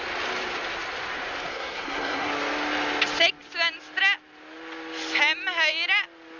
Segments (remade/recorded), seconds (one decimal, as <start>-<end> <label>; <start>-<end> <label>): 0.0-1.5 recorded; 1.5-2.3 remade; 2.3-6.4 recorded